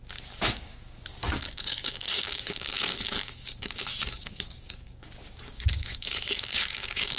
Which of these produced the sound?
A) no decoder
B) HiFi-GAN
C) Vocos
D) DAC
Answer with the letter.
D